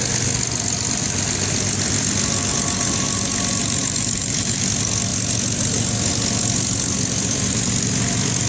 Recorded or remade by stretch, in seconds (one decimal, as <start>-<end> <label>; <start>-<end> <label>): 0.0-3.8 recorded; 3.8-4.6 remade; 4.6-8.5 recorded